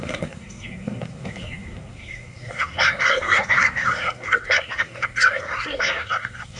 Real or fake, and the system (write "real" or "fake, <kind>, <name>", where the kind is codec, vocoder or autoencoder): fake, codec, SNAC